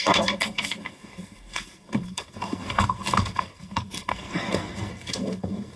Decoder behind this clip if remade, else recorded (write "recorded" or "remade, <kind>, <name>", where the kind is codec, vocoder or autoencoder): remade, codec, SNAC